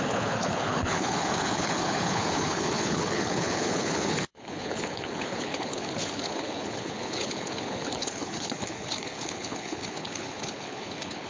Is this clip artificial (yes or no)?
yes